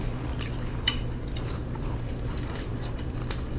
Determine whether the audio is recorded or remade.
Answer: remade